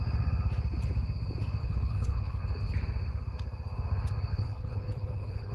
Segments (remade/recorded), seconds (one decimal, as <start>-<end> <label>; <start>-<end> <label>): 0.0-1.6 recorded; 1.6-2.4 remade; 2.4-4.3 recorded; 4.3-5.5 remade

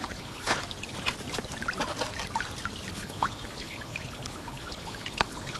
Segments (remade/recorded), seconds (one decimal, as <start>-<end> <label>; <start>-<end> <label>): 0.0-0.6 remade; 0.6-2.9 recorded; 2.9-5.6 remade